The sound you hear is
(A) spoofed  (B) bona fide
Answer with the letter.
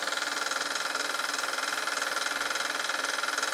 B